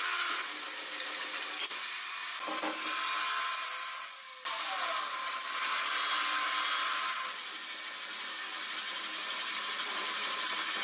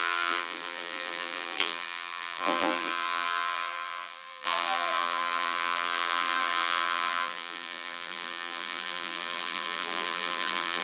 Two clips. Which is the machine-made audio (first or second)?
second